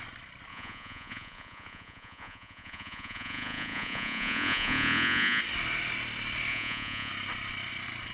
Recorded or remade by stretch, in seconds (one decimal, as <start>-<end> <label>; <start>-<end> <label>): 0.0-0.5 recorded; 0.5-5.4 remade; 5.4-6.5 recorded; 6.5-7.1 remade; 7.1-8.1 recorded